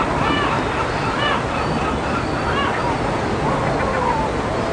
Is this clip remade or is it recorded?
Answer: recorded